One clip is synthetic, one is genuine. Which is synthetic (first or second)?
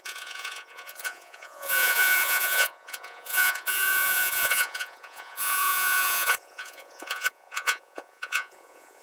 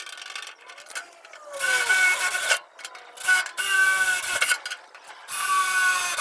first